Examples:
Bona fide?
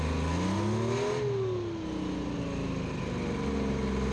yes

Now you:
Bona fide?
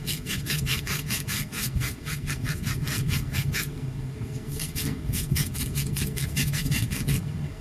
no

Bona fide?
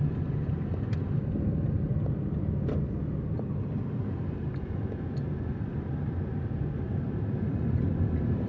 no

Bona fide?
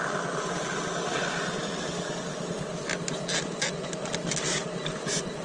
yes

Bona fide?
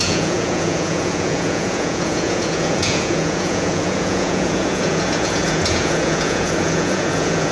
no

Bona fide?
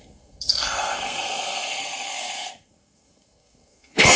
no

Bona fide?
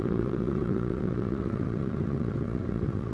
no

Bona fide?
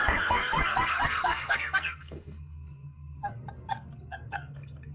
no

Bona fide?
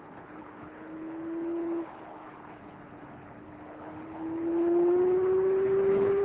no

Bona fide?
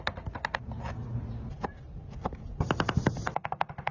yes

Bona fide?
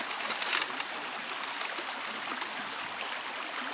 yes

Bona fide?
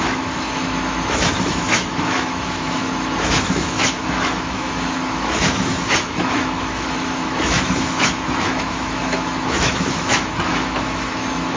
no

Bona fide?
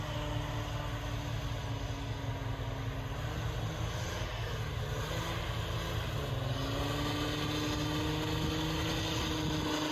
yes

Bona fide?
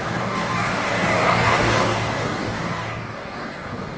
no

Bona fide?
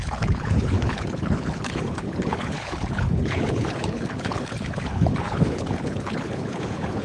no